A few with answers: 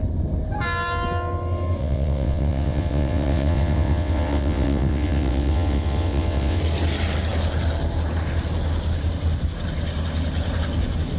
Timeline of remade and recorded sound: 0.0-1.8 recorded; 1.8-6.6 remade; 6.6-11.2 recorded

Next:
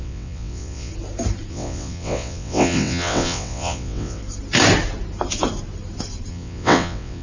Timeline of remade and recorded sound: 0.0-0.9 remade; 0.9-1.5 recorded; 1.5-4.2 remade; 4.2-6.3 recorded; 6.3-7.2 remade

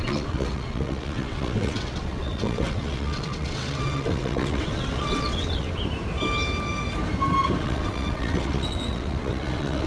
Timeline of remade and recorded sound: 0.0-5.8 remade; 5.8-7.6 recorded; 7.6-9.9 remade

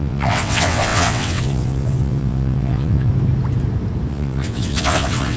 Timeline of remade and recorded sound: 0.0-3.1 remade; 3.1-4.1 recorded; 4.1-5.4 remade

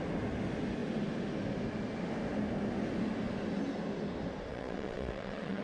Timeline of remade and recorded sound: 0.0-4.5 recorded; 4.5-5.6 remade

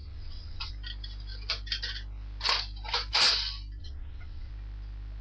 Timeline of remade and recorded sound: 0.0-0.7 remade; 0.7-3.8 recorded; 3.8-4.5 remade; 4.5-5.2 recorded

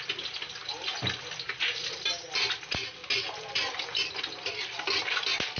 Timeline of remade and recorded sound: 0.0-5.6 recorded

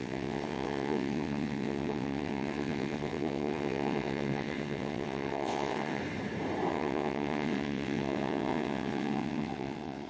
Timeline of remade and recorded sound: 0.0-6.0 remade; 6.0-6.7 recorded; 6.7-10.1 remade